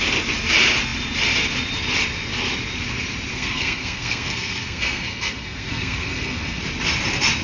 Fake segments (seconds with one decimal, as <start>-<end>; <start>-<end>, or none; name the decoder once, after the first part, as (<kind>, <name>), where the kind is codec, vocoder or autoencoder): 3.3-6.6 (codec, SNAC)